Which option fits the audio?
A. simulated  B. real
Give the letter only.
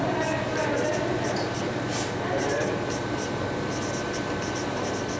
B